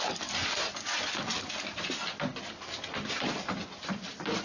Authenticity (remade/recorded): recorded